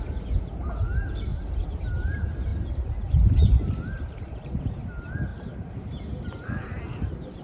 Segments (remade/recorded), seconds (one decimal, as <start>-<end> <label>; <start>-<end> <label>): 0.0-7.4 recorded